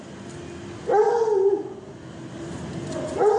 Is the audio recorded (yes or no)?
yes